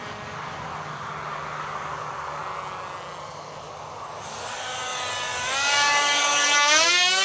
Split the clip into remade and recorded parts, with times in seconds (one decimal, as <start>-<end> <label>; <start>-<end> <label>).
0.0-2.4 remade; 2.4-3.2 recorded; 3.2-7.2 remade

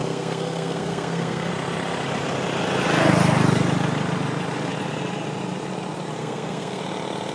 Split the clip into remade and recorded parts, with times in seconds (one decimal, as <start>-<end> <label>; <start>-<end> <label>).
0.0-1.5 remade; 1.5-6.2 recorded; 6.2-6.8 remade; 6.8-7.3 recorded

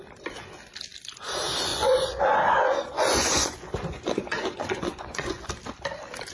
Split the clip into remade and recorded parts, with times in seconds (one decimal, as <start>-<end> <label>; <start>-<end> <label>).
0.0-1.7 recorded; 1.7-5.5 remade; 5.5-6.3 recorded

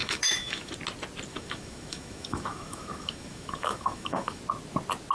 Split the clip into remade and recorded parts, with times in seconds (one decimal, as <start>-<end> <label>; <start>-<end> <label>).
0.0-0.7 remade; 0.7-1.3 recorded; 1.3-4.4 remade; 4.4-5.1 recorded

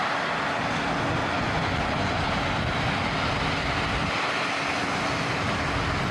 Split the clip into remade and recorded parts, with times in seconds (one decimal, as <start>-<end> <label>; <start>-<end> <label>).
0.0-1.2 recorded; 1.2-2.2 remade; 2.2-6.1 recorded